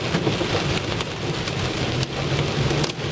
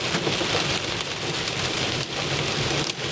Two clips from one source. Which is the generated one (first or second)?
second